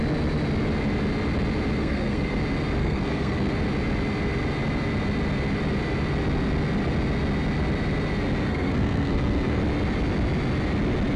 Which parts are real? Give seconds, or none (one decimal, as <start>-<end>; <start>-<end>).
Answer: 0.0-1.8; 2.4-2.8; 3.5-8.5; 9.6-11.2